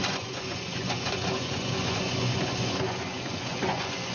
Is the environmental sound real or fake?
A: fake